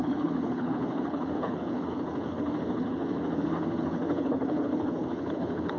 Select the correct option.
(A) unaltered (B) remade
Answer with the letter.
B